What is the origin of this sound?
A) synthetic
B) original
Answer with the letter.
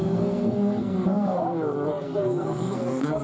A